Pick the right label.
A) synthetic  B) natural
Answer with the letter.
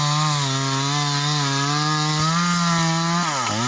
B